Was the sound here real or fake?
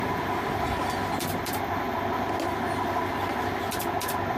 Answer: real